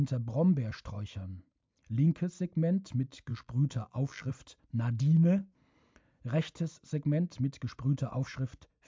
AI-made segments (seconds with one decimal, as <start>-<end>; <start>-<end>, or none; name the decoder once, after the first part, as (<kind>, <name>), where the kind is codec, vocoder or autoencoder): 3.3-4.3 (vocoder, BigVGAN v2)